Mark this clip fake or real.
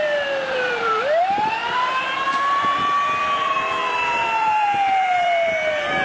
fake